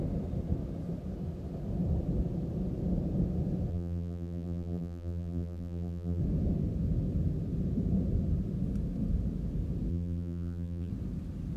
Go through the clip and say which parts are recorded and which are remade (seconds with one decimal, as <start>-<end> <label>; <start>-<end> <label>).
0.0-3.7 recorded; 3.7-6.2 remade; 6.2-9.9 recorded; 9.9-10.9 remade; 10.9-11.6 recorded